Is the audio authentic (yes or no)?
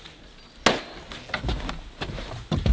yes